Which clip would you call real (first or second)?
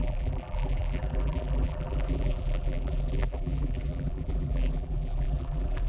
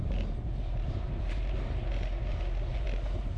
second